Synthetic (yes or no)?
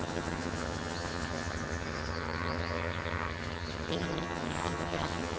yes